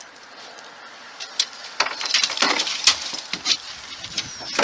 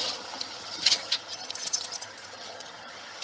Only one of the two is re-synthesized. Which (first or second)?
second